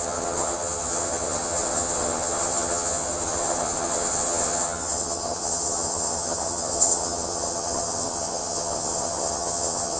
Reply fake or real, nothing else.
fake